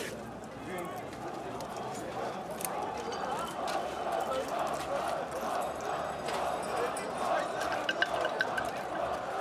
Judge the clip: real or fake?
fake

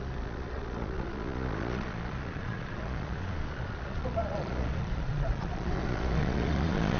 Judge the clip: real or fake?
fake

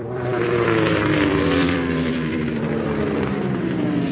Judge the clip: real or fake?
fake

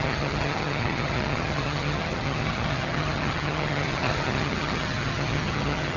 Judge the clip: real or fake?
fake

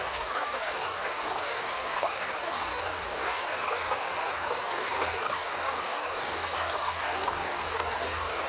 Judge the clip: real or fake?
fake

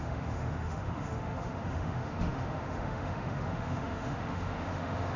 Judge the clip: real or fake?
fake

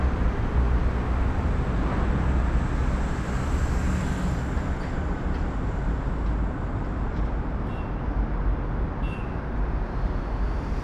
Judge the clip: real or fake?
real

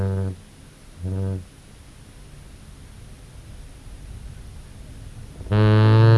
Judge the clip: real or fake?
real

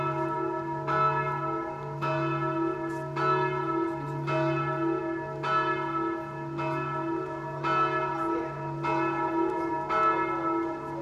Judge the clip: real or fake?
real